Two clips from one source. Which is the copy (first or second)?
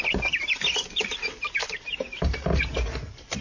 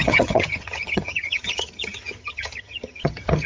second